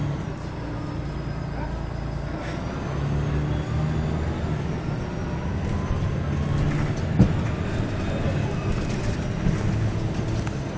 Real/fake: real